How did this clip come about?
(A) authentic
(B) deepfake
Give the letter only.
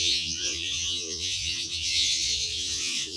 B